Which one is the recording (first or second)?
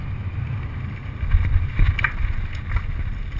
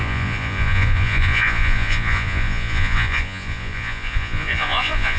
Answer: first